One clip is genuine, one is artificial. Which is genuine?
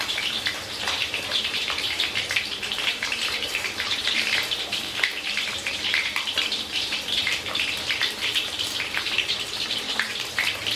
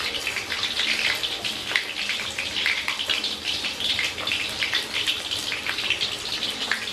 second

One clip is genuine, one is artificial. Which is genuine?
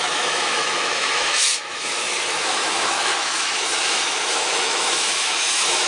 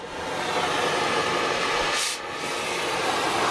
second